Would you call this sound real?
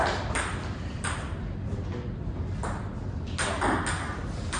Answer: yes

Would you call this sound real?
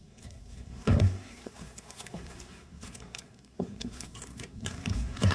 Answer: no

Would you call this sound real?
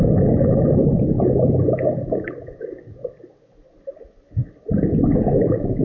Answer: yes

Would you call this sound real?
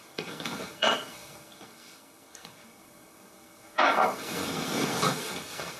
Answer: no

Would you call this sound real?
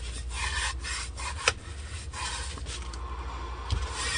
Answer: yes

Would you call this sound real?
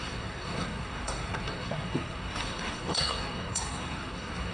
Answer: no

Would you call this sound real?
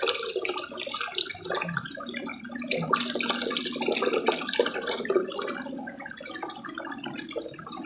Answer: yes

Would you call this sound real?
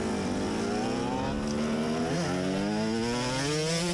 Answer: yes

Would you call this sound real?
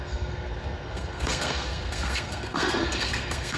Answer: no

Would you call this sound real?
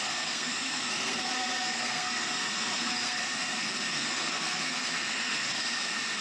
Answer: no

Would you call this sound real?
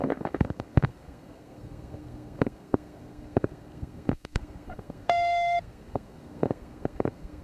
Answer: no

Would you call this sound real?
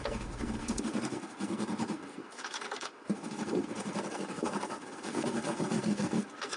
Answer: no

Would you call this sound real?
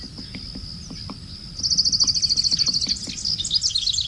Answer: yes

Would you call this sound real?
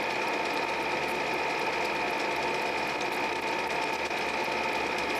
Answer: yes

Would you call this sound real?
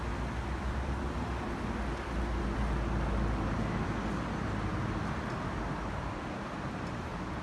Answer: yes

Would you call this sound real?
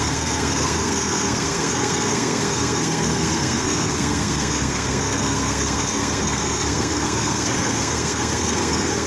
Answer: no